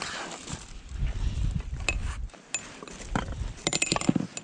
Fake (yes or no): no